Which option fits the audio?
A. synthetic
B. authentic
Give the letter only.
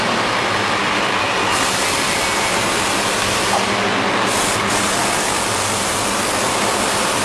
B